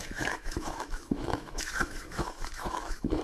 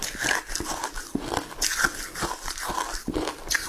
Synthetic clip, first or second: first